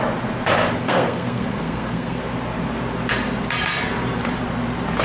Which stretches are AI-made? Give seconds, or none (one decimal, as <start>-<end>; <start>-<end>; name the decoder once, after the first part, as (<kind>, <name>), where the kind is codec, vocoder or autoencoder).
0.8-2.2 (codec, SNAC)